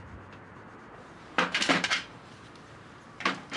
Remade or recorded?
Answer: remade